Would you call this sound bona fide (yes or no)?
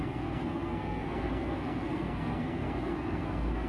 no